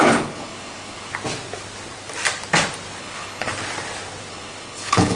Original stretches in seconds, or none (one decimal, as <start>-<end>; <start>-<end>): 1.1-3.0; 3.5-4.3